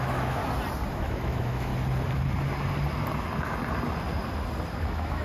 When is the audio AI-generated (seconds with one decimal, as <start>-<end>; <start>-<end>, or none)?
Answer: 0.0-0.4; 0.9-1.7; 4.8-5.2